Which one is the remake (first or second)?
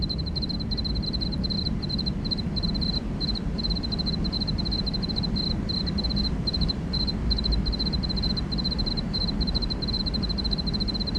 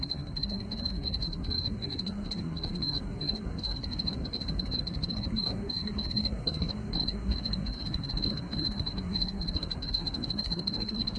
second